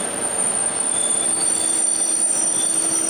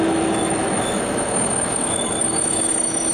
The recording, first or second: first